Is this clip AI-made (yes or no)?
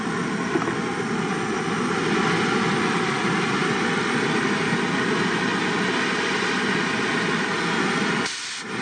no